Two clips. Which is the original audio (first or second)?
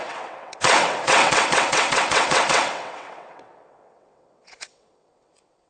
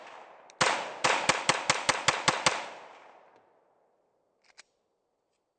second